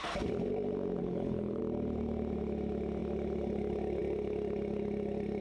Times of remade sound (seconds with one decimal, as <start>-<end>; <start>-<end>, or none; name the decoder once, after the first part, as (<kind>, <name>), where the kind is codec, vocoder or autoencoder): 1.0-1.6 (codec, HILCodec)